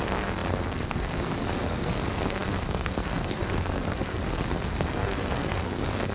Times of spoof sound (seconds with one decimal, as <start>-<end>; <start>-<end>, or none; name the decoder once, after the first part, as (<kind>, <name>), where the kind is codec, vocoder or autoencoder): 0.0-6.1 (codec, SNAC)